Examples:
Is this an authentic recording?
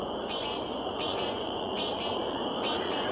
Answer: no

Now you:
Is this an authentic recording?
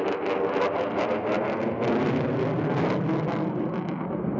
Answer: yes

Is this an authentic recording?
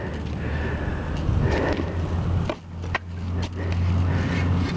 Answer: yes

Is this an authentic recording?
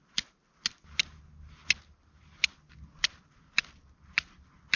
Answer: yes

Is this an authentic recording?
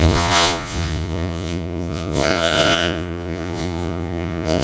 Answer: no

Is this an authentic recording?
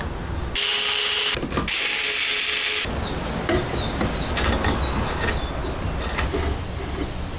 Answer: yes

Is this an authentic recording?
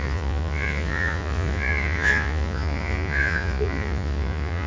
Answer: no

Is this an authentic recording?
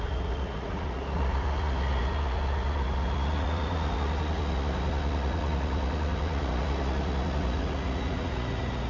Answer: no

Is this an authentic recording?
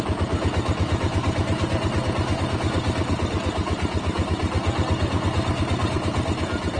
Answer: yes